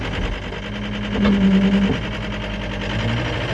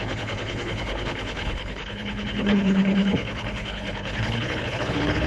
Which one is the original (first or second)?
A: first